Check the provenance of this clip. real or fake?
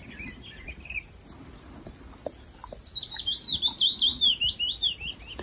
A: fake